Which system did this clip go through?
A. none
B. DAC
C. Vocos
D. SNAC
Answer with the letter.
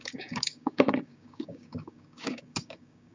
B